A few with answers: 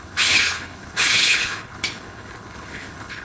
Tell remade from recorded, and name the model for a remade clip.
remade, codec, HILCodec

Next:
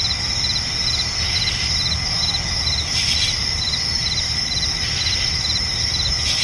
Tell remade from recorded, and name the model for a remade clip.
recorded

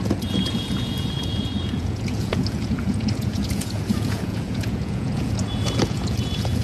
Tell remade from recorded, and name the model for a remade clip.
remade, vocoder, Vocos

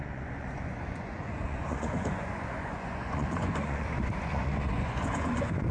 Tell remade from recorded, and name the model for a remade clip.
remade, vocoder, Vocos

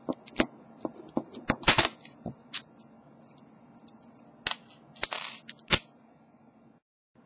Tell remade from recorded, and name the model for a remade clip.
recorded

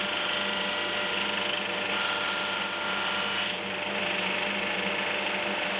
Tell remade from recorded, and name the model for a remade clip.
recorded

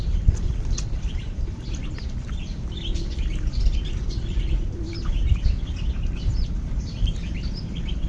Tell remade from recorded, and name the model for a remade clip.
recorded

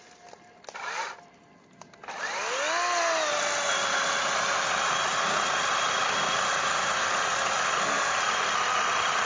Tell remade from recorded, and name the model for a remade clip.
recorded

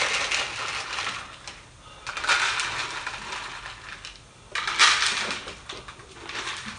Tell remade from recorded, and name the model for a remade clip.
recorded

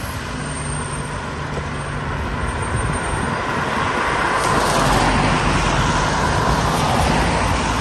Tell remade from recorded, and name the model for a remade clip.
recorded